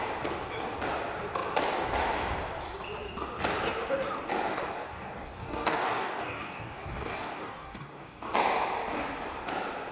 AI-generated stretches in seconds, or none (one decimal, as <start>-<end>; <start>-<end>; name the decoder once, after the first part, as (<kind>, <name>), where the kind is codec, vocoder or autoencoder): 4.5-8.3 (codec, DAC)